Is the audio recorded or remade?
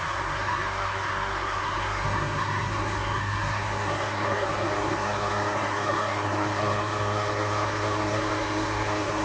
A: remade